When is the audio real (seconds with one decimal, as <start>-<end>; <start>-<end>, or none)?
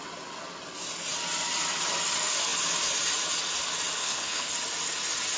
0.0-4.0; 4.5-5.4